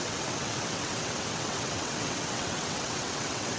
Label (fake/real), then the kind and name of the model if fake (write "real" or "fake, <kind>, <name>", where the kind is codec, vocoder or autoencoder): fake, vocoder, WaveNeXt